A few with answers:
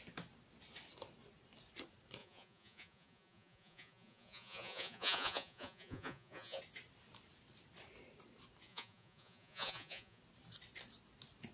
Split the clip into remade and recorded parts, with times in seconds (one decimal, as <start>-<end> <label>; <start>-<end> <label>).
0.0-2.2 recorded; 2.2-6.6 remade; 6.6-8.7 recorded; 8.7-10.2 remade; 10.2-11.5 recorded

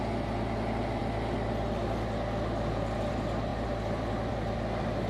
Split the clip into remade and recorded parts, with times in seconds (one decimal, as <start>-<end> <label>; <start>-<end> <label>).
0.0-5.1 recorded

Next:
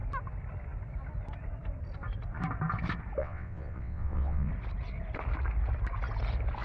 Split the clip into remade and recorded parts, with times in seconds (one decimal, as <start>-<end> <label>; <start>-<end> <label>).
0.0-3.2 recorded; 3.2-4.5 remade; 4.5-6.6 recorded

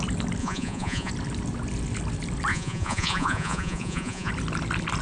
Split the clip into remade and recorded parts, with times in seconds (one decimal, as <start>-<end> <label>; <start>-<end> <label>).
0.0-0.4 recorded; 0.4-1.1 remade; 1.1-2.5 recorded; 2.5-4.3 remade; 4.3-5.0 recorded

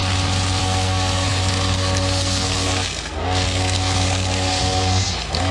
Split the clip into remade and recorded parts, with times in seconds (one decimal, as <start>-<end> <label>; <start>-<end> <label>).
0.0-0.6 recorded; 0.6-5.5 remade

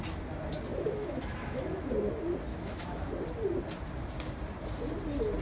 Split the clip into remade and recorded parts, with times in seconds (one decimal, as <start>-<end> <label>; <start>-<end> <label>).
0.0-0.7 recorded; 0.7-1.9 remade; 1.9-2.5 recorded; 2.5-3.1 remade; 3.1-5.4 recorded